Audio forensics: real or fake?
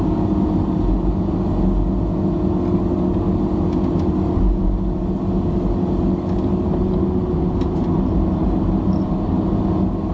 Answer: real